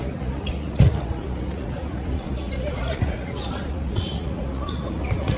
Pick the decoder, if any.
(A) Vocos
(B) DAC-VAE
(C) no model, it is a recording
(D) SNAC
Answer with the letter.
A